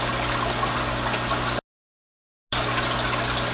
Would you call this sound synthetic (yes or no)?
no